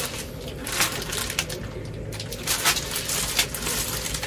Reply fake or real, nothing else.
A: real